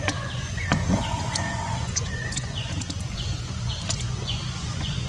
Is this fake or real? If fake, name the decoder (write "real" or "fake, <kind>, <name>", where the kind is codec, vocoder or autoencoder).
fake, vocoder, Vocos